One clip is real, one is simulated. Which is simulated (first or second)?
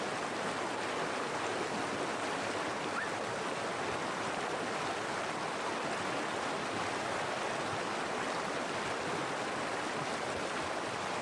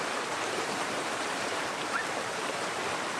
second